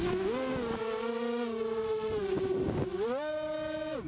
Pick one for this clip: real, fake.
real